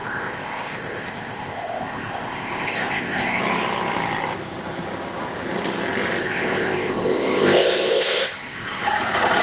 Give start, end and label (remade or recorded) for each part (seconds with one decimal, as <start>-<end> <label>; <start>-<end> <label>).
0.0-3.4 remade; 3.4-6.2 recorded; 6.2-8.8 remade; 8.8-9.4 recorded